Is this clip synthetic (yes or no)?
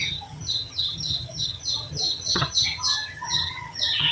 yes